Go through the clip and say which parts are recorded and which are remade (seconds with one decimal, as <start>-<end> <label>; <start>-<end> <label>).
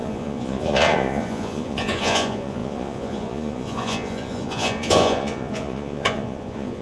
0.0-6.8 remade